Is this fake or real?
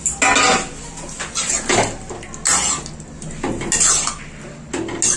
real